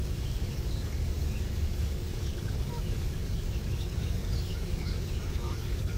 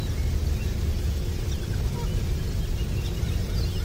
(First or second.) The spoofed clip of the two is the first